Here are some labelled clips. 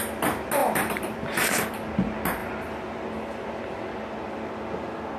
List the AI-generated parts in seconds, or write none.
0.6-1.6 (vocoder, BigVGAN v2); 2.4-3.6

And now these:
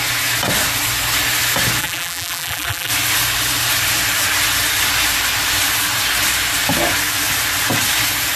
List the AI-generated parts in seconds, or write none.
1.8-2.9 (vocoder, BigVGAN v2)

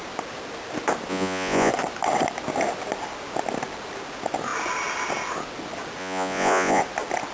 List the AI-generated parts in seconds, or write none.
1.1-1.7 (vocoder, Vocos); 6.0-6.8

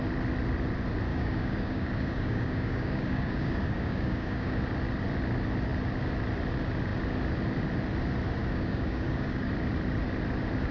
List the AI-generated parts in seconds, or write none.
1.1-4.6 (codec, DAC); 8.4-9.5